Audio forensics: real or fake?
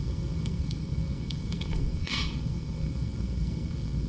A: fake